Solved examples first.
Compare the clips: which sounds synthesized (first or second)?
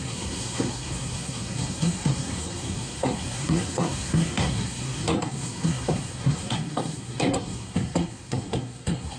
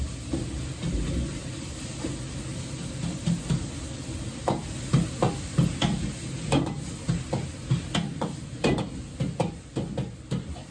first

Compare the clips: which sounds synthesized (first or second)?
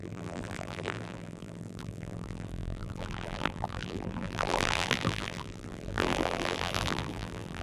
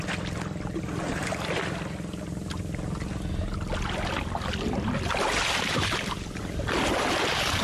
first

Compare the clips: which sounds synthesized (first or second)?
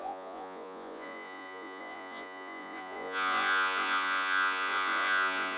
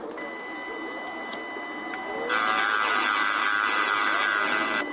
first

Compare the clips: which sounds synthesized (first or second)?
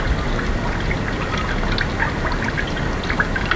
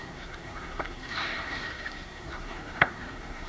second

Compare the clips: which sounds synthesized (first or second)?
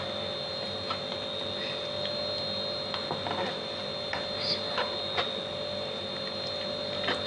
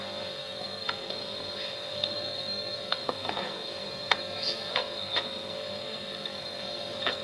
second